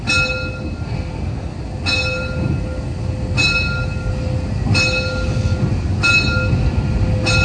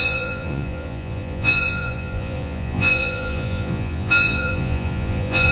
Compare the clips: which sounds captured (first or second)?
first